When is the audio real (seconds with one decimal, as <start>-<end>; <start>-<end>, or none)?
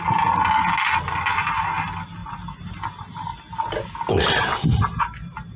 0.0-5.6